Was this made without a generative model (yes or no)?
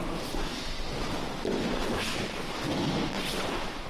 no